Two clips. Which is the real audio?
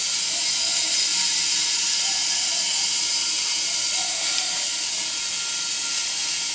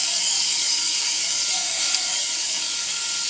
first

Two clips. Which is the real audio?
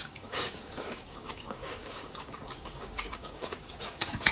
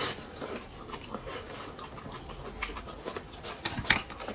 second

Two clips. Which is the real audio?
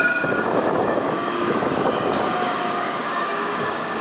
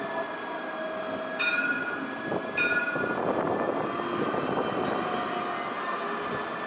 second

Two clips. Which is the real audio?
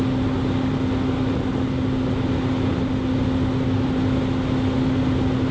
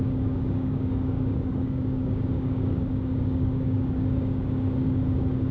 first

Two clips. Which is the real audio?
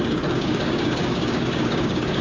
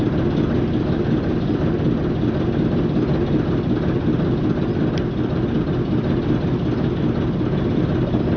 second